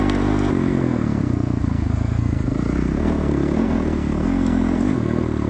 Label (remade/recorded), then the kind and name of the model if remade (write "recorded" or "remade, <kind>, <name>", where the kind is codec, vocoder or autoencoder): remade, codec, SNAC